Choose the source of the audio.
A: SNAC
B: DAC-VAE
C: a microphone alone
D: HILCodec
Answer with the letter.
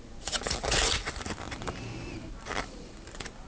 C